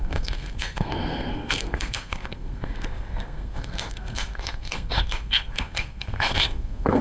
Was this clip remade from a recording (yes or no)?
yes